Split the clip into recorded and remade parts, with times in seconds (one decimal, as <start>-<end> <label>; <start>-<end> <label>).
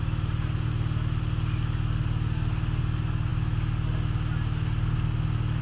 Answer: 0.0-5.6 recorded